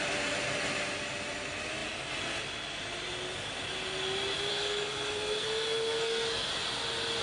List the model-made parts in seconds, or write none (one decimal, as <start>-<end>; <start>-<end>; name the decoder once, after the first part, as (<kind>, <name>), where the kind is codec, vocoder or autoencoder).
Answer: 4.5-6.5 (codec, SNAC)